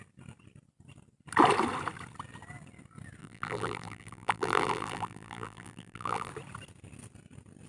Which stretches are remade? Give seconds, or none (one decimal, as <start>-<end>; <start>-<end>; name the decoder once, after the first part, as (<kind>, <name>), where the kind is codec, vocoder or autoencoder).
3.2-6.3 (vocoder, BigVGAN v2)